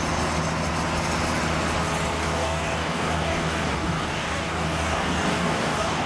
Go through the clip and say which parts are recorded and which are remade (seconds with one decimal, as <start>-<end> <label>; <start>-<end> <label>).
0.0-2.2 recorded; 2.2-6.1 remade